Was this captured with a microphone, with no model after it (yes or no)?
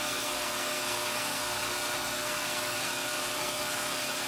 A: no